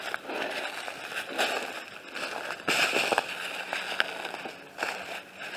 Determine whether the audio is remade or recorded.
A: recorded